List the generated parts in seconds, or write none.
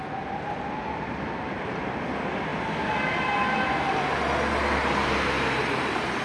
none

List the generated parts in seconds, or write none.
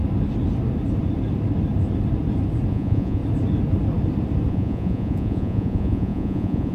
2.7-3.2 (vocoder, Vocos); 4.5-6.7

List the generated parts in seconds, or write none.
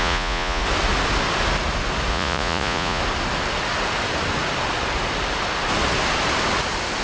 0.0-0.6 (vocoder, Vocos); 2.1-3.0